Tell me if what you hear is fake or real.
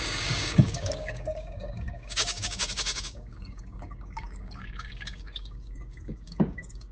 fake